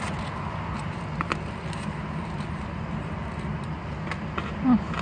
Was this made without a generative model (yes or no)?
yes